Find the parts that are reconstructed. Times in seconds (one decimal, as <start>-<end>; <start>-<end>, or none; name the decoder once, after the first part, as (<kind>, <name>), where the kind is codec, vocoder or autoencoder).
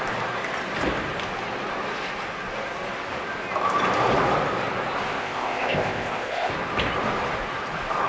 5.2-6.5 (codec, ZipCodec)